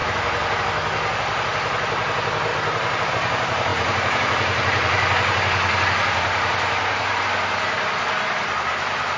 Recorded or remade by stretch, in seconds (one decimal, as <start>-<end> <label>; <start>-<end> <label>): 0.0-0.6 remade; 0.6-2.5 recorded; 2.5-3.1 remade; 3.1-3.7 recorded; 3.7-7.2 remade; 7.2-9.2 recorded